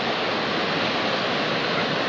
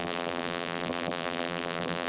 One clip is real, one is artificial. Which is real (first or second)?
first